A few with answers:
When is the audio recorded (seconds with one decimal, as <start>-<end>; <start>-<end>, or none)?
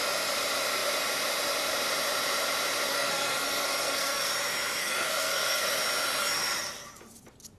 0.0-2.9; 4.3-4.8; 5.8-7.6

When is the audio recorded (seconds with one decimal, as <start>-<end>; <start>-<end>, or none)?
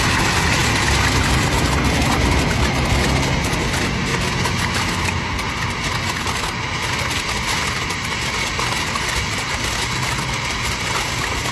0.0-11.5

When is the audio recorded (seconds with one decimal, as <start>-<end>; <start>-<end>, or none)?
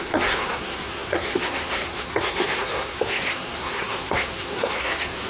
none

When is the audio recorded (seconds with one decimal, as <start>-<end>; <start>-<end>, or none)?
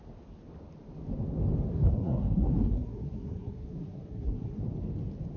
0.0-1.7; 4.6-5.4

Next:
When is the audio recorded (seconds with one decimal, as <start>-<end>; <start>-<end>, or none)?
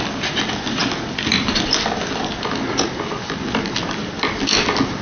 0.0-5.0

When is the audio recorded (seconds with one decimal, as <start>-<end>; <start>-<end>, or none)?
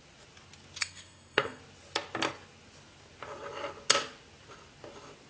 0.0-0.8; 1.6-5.3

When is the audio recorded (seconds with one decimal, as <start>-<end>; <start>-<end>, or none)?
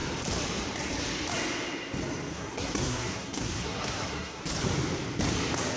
0.0-2.3; 4.4-5.8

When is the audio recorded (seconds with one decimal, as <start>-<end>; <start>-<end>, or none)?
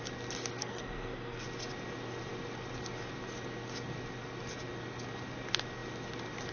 0.0-0.6; 1.4-6.5